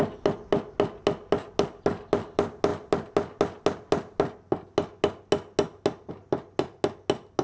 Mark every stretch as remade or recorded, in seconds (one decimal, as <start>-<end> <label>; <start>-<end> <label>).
0.0-7.4 recorded